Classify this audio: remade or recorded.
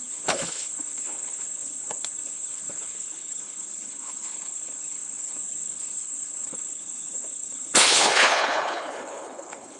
remade